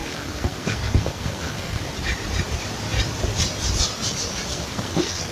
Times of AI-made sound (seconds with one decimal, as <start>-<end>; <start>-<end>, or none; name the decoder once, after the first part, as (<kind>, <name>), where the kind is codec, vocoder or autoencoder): 0.0-1.8 (codec, SNAC); 4.5-5.3

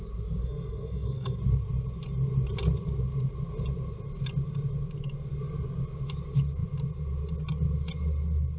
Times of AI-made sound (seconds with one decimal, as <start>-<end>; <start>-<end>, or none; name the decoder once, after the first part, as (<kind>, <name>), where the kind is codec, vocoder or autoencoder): 0.4-1.4 (codec, SNAC)

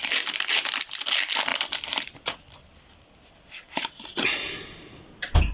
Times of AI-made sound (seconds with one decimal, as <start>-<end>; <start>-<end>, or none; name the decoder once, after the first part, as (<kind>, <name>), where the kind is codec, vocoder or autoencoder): none